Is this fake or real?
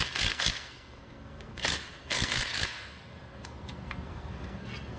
fake